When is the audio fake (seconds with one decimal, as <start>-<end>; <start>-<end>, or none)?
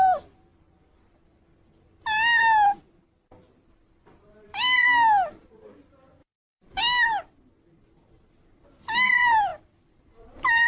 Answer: 6.2-6.8; 9.5-10.7